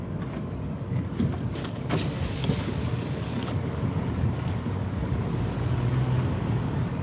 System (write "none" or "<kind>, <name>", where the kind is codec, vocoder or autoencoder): codec, DAC